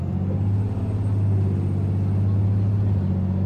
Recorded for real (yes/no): yes